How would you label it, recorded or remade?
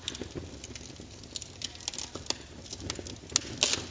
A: recorded